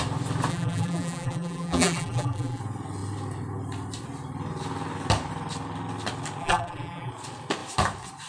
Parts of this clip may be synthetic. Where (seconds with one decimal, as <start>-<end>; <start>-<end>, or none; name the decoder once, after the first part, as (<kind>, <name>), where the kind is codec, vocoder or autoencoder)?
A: 0.5-2.6 (vocoder, BigVGAN v2); 6.4-7.1